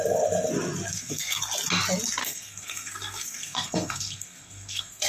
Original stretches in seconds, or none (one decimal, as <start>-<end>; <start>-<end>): 0.0-0.9; 1.4-2.2